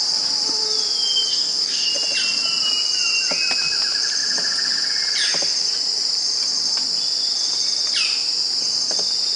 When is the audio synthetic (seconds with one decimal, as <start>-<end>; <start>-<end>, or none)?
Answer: 1.3-1.9